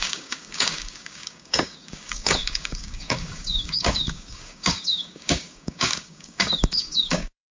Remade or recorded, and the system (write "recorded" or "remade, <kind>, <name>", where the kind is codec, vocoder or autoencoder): remade, codec, DAC